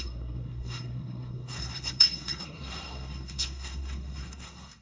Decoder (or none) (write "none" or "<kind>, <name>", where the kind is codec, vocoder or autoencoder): codec, SNAC